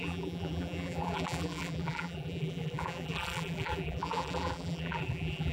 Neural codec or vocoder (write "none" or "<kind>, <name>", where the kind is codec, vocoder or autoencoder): vocoder, BigVGAN v2